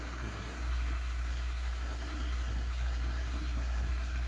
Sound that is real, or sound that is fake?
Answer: fake